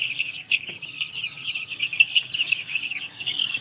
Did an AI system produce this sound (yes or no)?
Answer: yes